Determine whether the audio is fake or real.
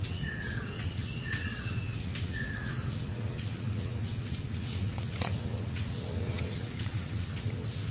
fake